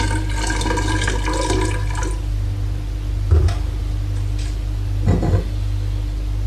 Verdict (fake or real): real